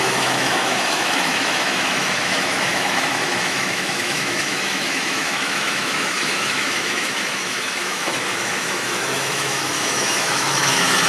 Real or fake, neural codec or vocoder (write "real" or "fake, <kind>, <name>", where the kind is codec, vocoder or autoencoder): fake, autoencoder, DAC-VAE